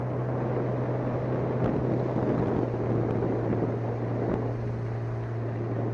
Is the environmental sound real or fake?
real